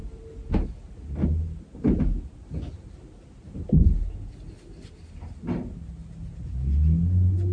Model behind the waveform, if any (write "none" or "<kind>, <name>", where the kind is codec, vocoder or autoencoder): none